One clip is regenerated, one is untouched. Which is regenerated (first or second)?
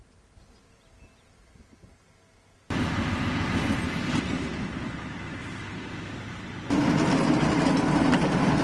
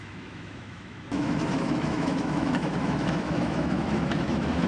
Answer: second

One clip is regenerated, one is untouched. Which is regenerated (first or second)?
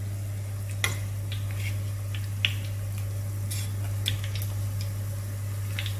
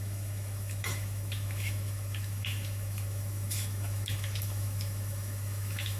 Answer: second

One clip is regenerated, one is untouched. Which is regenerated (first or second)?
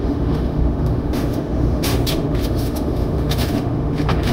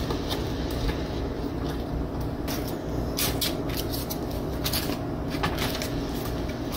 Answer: first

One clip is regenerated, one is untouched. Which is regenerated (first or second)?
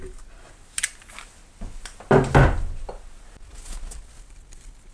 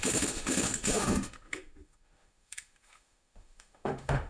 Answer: second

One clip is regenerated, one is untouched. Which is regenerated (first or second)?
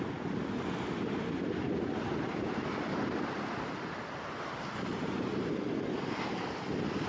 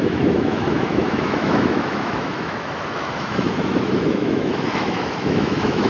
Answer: second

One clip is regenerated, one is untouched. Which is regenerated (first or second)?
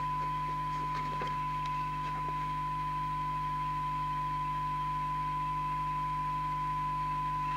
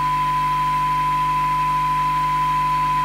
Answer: first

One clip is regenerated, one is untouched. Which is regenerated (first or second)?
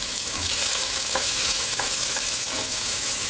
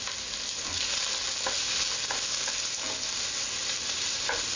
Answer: first